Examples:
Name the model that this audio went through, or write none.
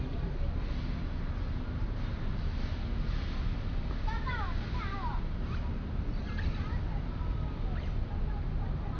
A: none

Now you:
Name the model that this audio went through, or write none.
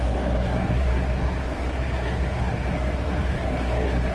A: codec, SNAC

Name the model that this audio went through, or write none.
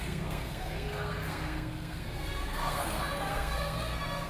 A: codec, SNAC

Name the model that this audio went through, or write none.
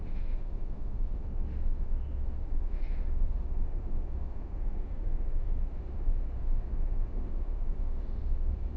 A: autoencoder, DAC-VAE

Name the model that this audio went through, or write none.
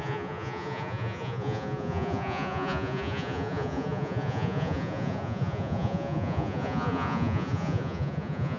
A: vocoder, Vocos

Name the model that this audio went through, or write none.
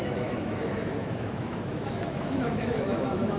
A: autoencoder, DAC-VAE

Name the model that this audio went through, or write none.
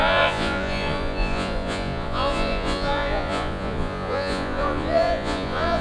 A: vocoder, Vocos